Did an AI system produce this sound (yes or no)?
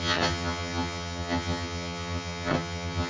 yes